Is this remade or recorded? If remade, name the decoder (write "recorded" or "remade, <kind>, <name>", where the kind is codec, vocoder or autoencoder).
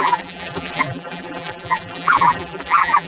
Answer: remade, vocoder, BigVGAN v2